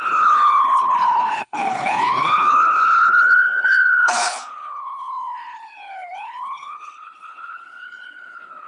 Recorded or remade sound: remade